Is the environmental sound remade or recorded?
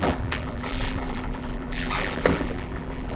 remade